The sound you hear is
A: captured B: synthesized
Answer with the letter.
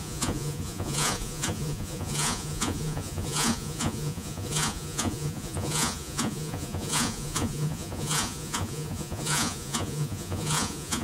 B